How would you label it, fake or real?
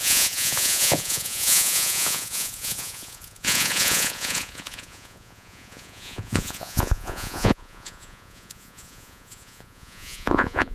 fake